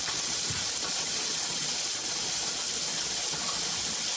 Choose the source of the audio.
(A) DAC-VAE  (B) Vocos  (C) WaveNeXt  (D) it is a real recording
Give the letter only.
D